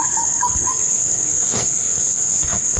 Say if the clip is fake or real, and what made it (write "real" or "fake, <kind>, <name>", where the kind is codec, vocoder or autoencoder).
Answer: fake, codec, SNAC